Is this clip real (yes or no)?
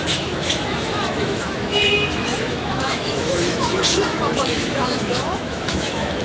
no